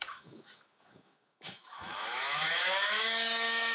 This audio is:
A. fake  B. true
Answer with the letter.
A